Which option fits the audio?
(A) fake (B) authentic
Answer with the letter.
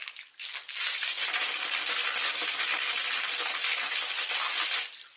B